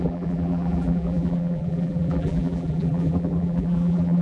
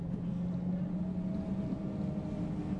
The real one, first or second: second